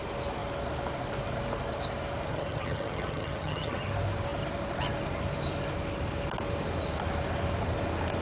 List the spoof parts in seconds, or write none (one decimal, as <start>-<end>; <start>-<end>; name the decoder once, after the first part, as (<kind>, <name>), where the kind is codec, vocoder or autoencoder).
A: 2.3-3.9 (vocoder, HiFi-GAN)